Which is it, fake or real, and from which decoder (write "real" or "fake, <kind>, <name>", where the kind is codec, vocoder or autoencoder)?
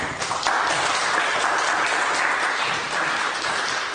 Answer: real